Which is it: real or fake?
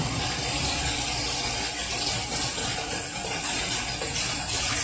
real